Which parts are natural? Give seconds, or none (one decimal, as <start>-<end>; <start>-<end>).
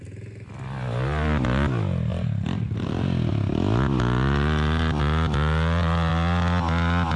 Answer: 0.0-7.2